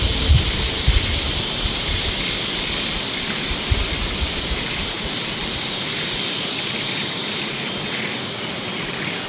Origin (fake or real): real